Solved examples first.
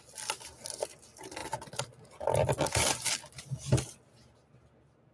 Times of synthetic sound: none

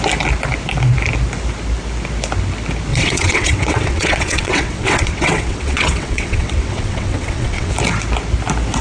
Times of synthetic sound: 2.9-7.7 (vocoder, WaveNeXt)

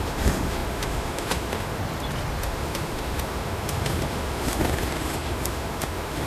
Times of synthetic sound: 0.0-1.8 (autoencoder, DAC-VAE); 2.4-6.3

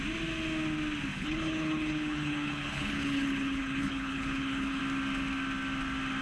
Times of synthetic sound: 1.1-4.8 (codec, HILCodec)

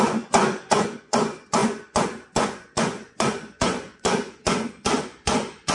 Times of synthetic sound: 0.0-5.7 (vocoder, Vocos)

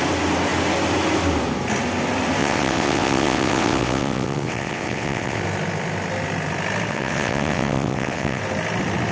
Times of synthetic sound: 2.4-5.4 (vocoder, WaveNeXt); 6.9-8.4

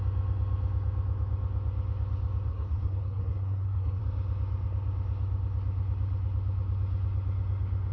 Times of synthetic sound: 2.5-4.0 (codec, SNAC)